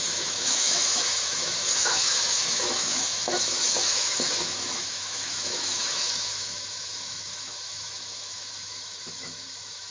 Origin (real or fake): fake